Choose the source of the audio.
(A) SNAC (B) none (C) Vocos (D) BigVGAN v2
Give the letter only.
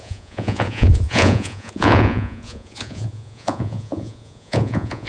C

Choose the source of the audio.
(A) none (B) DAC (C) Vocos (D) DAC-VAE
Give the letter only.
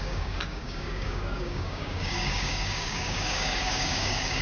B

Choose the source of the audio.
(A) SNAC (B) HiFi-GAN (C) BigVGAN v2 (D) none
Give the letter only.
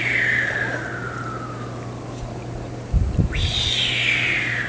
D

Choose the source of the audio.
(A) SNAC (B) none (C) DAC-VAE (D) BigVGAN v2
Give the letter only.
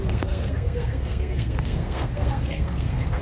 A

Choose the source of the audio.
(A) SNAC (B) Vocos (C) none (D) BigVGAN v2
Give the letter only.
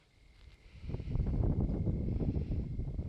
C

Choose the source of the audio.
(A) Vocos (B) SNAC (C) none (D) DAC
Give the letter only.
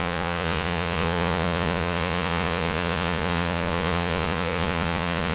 A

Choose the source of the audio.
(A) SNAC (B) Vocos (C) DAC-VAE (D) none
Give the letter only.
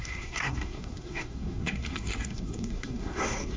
A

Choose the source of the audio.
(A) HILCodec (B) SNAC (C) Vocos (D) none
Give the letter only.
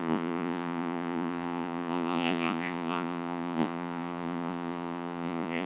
C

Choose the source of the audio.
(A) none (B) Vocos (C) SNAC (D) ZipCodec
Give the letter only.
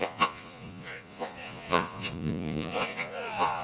B